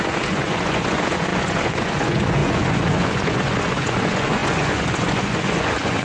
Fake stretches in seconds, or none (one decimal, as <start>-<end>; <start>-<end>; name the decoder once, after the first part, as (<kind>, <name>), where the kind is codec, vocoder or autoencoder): 0.0-6.0 (vocoder, Vocos)